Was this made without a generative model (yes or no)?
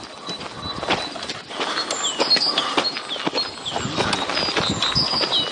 yes